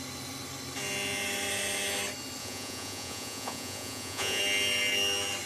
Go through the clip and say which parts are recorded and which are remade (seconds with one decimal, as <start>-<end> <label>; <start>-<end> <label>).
0.0-2.4 recorded; 2.4-4.4 remade; 4.4-5.5 recorded